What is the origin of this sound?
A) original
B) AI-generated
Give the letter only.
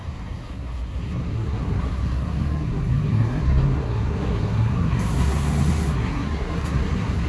B